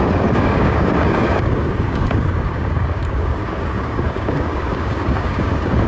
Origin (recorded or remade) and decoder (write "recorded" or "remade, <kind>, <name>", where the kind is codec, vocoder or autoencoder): remade, codec, DAC